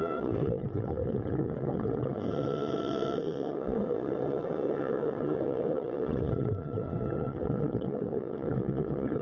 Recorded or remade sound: remade